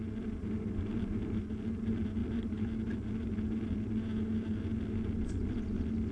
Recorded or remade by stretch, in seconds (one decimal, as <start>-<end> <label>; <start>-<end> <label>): 0.0-6.1 recorded